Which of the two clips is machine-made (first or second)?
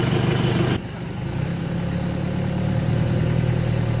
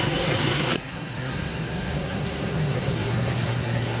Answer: second